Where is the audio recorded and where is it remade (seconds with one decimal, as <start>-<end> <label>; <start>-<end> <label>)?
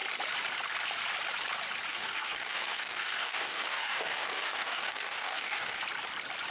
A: 0.0-1.9 recorded; 1.9-5.8 remade; 5.8-6.5 recorded